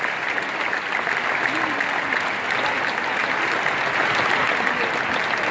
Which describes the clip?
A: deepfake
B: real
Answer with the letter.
B